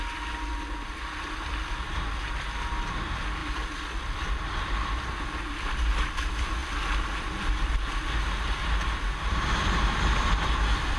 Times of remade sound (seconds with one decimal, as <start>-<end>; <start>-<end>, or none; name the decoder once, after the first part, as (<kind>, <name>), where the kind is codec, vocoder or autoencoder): none